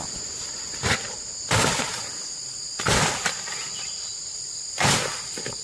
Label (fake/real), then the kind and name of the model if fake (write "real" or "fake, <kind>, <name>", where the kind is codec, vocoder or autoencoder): real